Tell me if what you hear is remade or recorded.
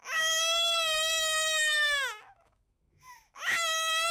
remade